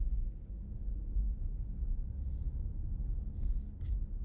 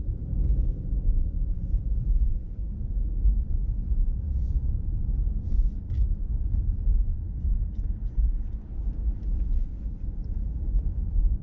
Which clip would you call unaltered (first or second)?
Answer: first